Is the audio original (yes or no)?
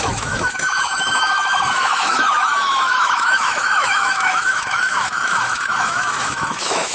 no